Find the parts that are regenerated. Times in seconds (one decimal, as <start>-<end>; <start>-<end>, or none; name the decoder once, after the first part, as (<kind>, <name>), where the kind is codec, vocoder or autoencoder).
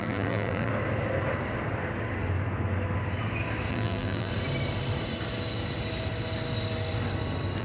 0.0-0.7 (vocoder, BigVGAN v2); 3.7-4.3